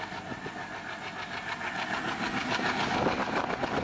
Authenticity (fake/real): real